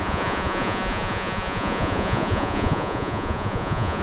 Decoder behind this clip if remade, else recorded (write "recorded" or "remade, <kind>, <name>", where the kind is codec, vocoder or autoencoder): remade, vocoder, Vocos